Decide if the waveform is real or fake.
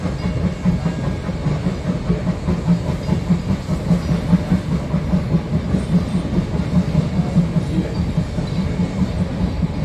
real